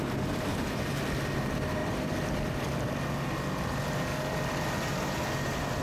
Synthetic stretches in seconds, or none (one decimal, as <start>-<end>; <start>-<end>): 1.8-3.0; 4.1-4.9